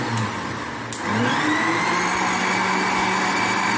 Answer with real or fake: real